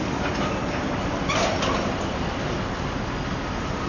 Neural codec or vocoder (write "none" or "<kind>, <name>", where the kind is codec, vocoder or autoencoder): none